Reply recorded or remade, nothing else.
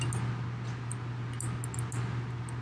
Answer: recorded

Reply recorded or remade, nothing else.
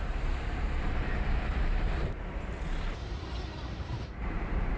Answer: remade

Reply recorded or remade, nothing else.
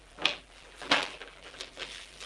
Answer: remade